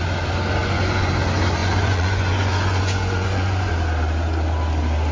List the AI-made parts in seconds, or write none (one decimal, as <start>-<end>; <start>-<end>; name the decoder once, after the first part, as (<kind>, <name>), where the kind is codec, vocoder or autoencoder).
0.6-1.1 (vocoder, Vocos); 1.6-3.7